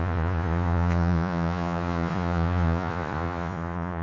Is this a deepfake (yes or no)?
yes